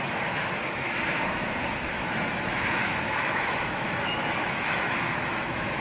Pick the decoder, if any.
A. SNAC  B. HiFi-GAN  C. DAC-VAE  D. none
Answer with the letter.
C